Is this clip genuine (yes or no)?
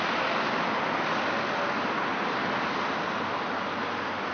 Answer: yes